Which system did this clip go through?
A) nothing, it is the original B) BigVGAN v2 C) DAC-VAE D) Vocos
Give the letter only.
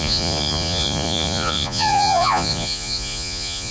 D